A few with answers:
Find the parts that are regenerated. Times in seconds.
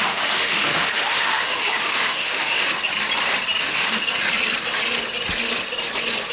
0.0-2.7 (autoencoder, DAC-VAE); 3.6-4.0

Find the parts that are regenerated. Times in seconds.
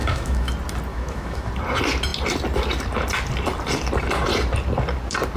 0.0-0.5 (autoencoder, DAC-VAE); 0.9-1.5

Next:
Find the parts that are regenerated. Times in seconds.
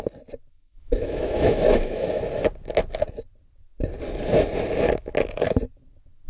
0.5-2.2 (autoencoder, DAC-VAE)